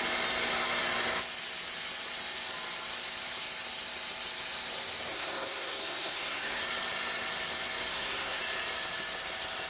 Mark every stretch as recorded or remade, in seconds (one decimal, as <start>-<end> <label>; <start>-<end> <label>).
0.0-5.1 recorded; 5.1-6.6 remade; 6.6-7.9 recorded; 7.9-8.4 remade; 8.4-9.7 recorded